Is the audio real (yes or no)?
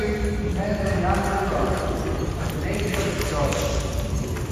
yes